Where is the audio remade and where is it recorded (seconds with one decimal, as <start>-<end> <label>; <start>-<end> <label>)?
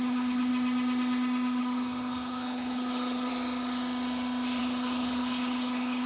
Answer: 0.0-0.5 remade; 0.5-1.6 recorded; 1.6-3.3 remade; 3.3-4.6 recorded; 4.6-6.1 remade